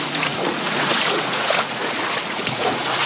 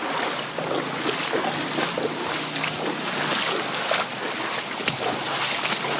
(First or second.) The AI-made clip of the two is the first